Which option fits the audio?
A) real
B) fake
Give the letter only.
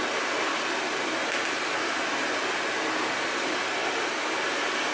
A